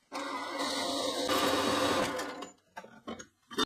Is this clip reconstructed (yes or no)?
no